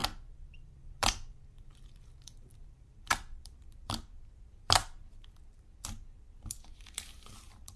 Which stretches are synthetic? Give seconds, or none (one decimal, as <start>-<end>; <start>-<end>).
0.0-7.8